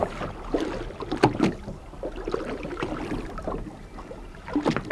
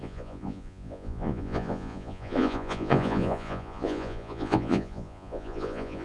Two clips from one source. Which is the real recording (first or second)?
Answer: first